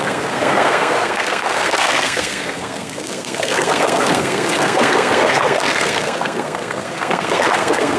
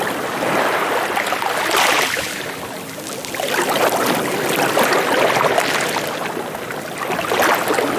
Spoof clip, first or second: first